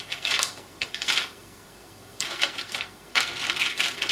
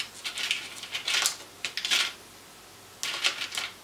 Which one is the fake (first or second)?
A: first